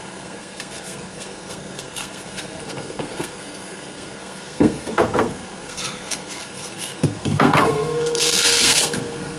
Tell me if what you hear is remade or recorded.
remade